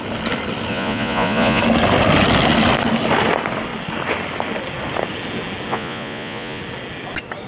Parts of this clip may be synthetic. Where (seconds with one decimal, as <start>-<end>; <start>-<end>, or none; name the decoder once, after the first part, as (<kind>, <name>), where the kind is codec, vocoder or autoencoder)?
0.7-1.6 (vocoder, Vocos); 5.7-6.6